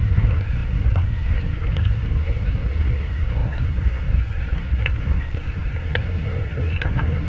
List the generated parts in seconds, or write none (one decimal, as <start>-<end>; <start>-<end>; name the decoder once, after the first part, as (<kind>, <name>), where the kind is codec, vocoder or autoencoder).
0.0-7.3 (codec, SNAC)